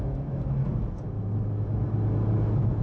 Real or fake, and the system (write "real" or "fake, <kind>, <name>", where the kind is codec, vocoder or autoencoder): fake, autoencoder, DAC-VAE